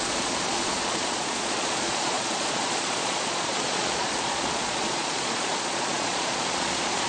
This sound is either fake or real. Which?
fake